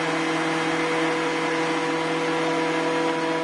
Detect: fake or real real